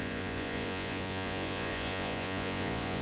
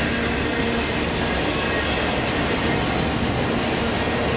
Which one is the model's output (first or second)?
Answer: first